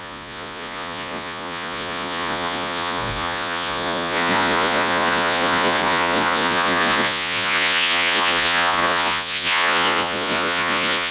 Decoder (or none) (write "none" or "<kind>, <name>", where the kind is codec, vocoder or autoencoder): vocoder, Vocos